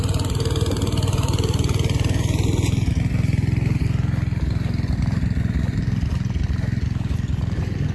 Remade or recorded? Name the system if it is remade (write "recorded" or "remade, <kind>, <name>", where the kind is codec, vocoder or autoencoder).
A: recorded